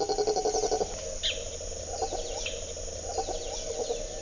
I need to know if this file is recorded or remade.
recorded